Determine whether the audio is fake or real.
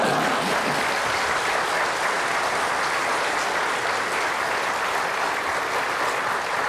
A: real